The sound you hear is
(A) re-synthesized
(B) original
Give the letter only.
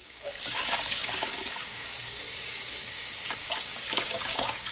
A